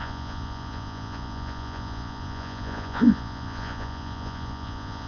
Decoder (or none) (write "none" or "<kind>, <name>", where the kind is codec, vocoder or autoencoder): vocoder, Vocos